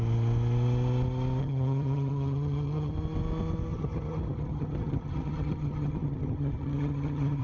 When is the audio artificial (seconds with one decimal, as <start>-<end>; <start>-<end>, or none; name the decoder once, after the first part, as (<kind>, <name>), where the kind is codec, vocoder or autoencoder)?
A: 1.4-2.9 (vocoder, HiFi-GAN); 3.7-7.4